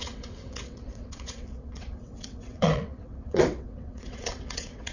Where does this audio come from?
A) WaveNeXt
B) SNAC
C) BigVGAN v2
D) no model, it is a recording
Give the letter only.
A